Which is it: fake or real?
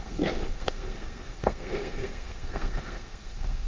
fake